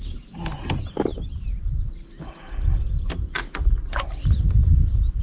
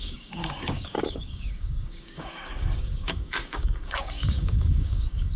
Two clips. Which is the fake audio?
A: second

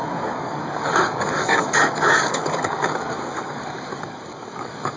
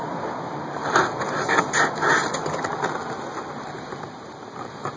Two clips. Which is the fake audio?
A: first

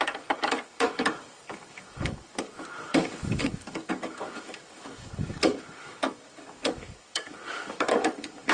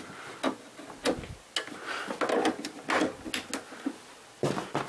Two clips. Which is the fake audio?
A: first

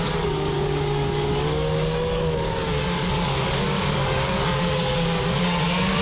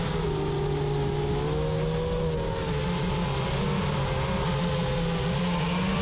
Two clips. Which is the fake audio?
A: first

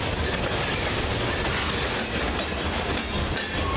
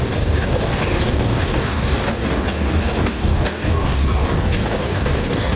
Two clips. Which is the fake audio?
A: second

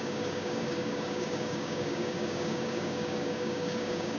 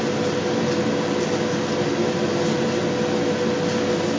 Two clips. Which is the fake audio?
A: first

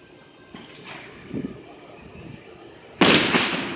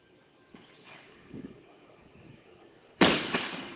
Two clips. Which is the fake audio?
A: second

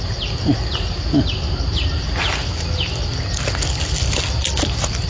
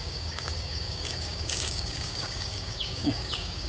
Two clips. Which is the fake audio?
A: second